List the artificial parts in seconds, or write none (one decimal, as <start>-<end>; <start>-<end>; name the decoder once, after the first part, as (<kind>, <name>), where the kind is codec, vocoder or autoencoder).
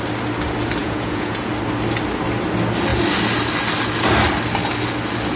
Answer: 0.8-1.5 (vocoder, Vocos)